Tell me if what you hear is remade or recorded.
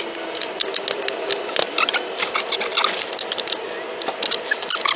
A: recorded